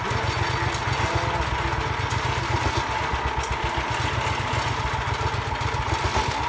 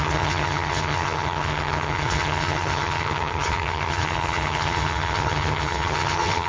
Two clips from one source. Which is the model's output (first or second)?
second